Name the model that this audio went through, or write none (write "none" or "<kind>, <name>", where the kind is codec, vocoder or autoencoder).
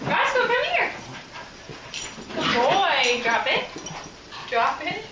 none